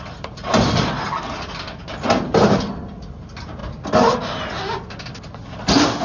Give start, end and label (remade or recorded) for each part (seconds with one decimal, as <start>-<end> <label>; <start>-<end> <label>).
0.0-6.0 recorded